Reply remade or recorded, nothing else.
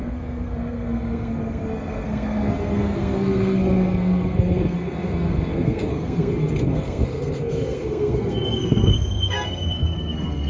remade